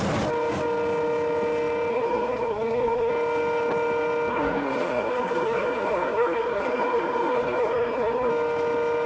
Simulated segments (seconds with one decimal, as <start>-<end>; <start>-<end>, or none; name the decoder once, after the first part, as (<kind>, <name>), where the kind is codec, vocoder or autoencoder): 1.9-3.1 (codec, SNAC); 4.3-8.3